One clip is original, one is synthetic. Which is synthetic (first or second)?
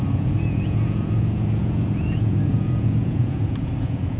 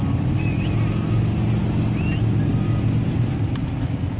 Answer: first